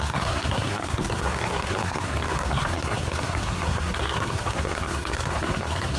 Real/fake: fake